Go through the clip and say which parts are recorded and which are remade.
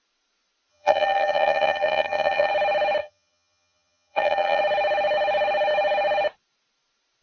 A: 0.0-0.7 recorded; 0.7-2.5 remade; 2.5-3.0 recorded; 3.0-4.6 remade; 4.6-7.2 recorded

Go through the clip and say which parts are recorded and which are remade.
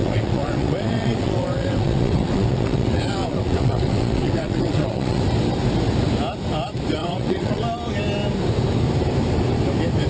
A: 0.0-5.2 remade; 5.2-7.0 recorded; 7.0-7.6 remade; 7.6-10.1 recorded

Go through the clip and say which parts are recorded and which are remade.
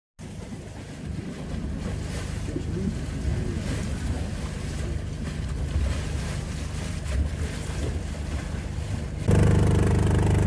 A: 0.0-10.5 recorded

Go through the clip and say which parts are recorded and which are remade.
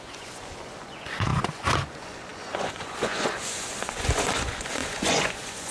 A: 0.0-5.7 remade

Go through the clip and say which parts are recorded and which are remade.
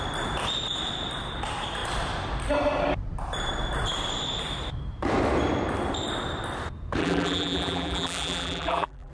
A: 0.0-7.0 recorded; 7.0-9.1 remade